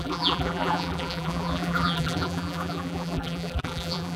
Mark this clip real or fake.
fake